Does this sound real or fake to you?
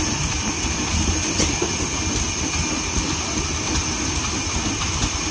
real